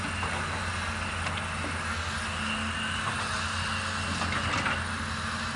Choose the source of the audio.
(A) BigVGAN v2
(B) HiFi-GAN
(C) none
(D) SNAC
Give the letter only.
C